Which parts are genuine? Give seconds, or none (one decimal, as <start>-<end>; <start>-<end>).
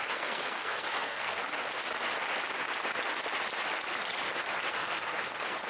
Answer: 1.4-4.7